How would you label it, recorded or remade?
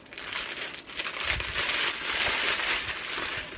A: recorded